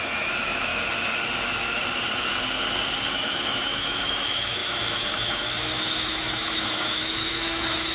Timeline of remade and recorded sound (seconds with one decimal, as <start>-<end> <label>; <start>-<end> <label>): 0.0-0.7 remade; 0.7-3.1 recorded; 3.1-7.9 remade